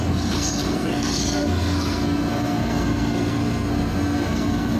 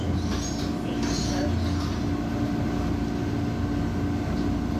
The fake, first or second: first